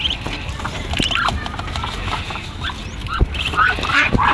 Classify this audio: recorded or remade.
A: recorded